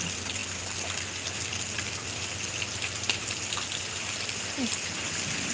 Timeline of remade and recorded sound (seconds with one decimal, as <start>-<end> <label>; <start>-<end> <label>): 0.0-5.5 recorded